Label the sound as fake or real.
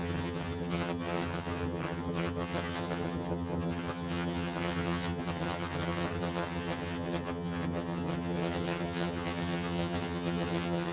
fake